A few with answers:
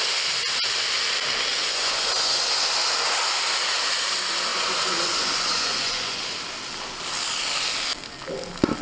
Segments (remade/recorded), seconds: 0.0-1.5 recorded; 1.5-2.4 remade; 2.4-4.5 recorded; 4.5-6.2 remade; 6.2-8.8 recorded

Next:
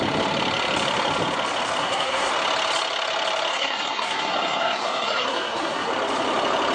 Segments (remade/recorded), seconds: 0.0-1.8 recorded; 1.8-2.3 remade; 2.3-3.5 recorded; 3.5-5.9 remade; 5.9-6.7 recorded

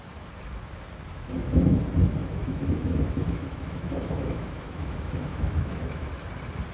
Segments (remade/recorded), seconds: 0.0-1.1 recorded; 1.1-1.8 remade; 1.8-2.2 recorded; 2.2-6.1 remade; 6.1-6.7 recorded